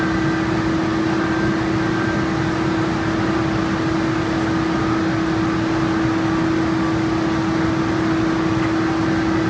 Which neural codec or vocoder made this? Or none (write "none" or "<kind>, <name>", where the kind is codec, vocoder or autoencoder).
none